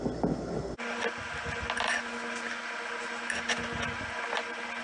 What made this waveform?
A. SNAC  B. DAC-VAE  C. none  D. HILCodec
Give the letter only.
C